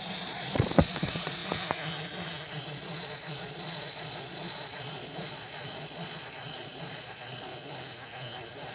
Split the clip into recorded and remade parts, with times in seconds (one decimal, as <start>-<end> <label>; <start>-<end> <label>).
0.0-1.4 remade; 1.4-2.5 recorded; 2.5-7.5 remade; 7.5-8.7 recorded